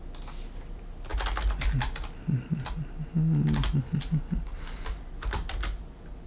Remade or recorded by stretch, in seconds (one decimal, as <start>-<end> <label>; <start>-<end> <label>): 0.0-6.3 recorded